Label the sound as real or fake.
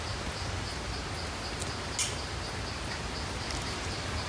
real